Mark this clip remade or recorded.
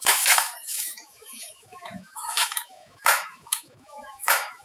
remade